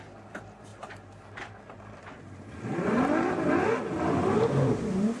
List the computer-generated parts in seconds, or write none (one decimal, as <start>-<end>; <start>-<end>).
none